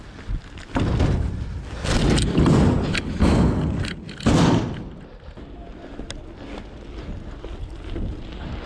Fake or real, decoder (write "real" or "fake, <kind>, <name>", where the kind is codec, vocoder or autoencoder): real